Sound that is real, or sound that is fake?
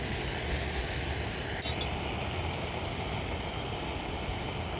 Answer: real